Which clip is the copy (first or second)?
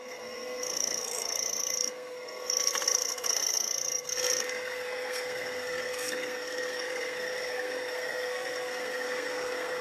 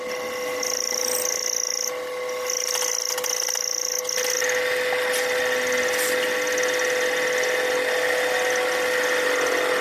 first